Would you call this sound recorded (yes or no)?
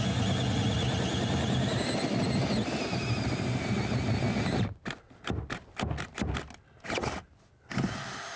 yes